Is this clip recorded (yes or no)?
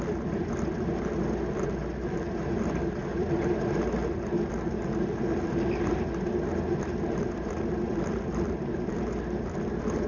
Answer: yes